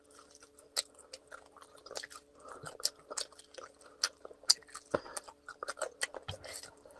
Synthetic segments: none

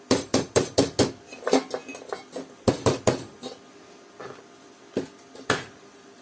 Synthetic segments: none